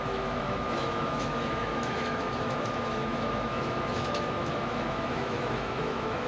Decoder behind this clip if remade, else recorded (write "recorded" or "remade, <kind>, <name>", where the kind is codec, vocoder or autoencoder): remade, autoencoder, DAC-VAE